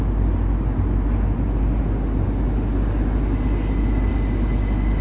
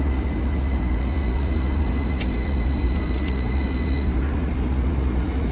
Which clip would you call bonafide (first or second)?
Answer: first